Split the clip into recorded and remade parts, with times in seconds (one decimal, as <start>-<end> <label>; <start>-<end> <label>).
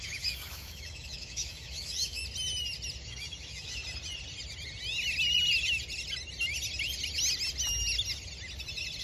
0.0-2.2 remade; 2.2-3.0 recorded; 3.0-3.8 remade; 3.8-9.0 recorded